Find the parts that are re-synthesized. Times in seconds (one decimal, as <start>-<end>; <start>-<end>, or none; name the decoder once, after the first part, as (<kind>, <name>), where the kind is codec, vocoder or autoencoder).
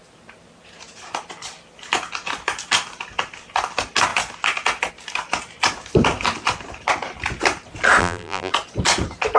8.0-8.5 (vocoder, BigVGAN v2)